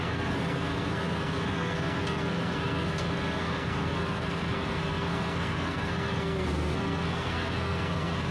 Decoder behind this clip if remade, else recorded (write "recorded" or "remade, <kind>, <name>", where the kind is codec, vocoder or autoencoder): remade, codec, SNAC